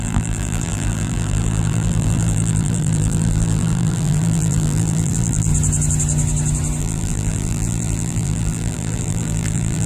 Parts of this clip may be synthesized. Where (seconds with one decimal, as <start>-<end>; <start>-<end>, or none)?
0.0-5.5; 6.8-9.9